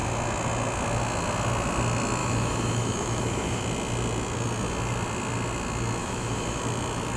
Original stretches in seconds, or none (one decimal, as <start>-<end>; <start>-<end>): 0.0-2.2; 3.6-6.0; 6.6-7.2